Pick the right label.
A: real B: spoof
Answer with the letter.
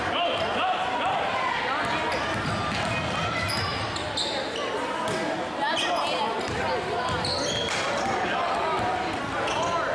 A